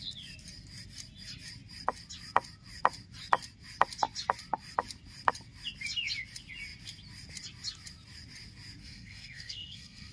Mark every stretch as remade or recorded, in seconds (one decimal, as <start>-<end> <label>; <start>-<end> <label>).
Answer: 0.0-8.8 recorded; 8.8-10.1 remade

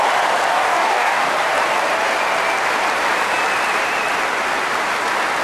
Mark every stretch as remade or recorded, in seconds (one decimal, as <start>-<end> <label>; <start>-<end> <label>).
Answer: 0.0-0.5 recorded; 0.5-1.3 remade; 1.3-5.4 recorded

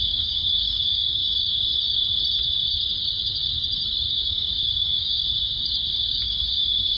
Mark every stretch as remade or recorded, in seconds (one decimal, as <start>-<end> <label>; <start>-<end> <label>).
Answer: 0.0-1.2 remade; 1.2-4.1 recorded; 4.1-5.2 remade; 5.2-5.9 recorded; 5.9-7.0 remade

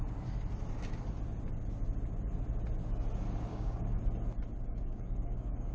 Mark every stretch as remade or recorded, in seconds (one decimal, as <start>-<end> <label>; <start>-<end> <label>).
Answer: 0.0-3.5 recorded; 3.5-4.0 remade; 4.0-4.7 recorded; 4.7-5.7 remade

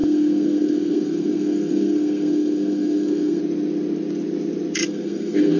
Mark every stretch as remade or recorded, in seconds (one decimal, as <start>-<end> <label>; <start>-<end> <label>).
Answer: 0.0-3.4 remade; 3.4-4.8 recorded; 4.8-5.6 remade

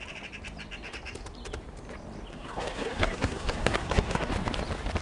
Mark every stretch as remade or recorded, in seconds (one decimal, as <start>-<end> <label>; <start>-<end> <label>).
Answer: 0.0-2.3 recorded; 2.3-4.3 remade; 4.3-5.0 recorded